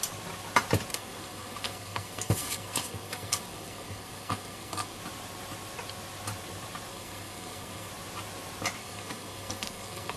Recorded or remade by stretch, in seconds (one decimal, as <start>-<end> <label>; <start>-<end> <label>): 0.0-0.9 recorded; 0.9-5.0 remade; 5.0-6.9 recorded; 6.9-7.9 remade; 7.9-8.8 recorded; 8.8-10.2 remade